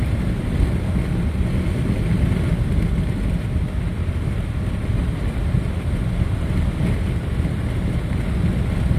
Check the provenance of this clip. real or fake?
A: real